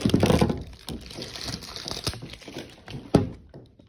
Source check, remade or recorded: recorded